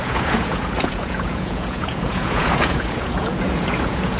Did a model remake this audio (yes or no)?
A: yes